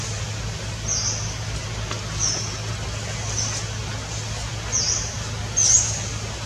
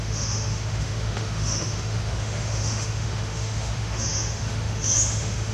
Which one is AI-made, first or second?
second